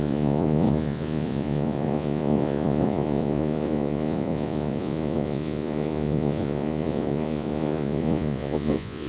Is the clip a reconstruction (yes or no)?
yes